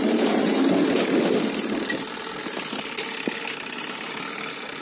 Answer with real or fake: real